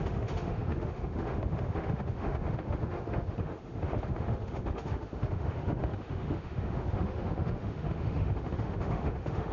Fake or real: fake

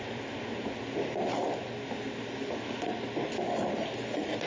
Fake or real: real